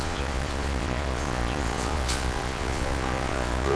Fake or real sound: fake